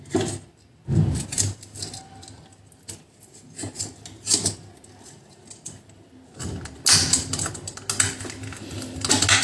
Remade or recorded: recorded